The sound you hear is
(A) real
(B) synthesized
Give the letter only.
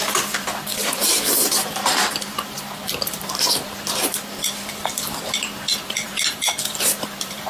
B